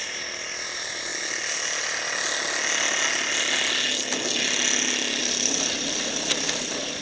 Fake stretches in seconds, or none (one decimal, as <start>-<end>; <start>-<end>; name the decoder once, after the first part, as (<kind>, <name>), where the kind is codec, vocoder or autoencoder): 0.0-1.1 (vocoder, BigVGAN v2); 5.2-7.0